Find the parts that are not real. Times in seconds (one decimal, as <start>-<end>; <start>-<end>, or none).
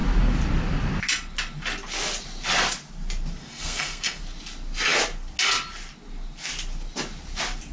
3.4-4.2